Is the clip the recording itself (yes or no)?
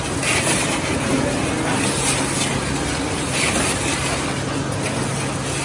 yes